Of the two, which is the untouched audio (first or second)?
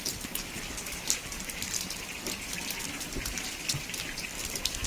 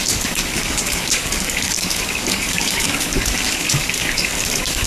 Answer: first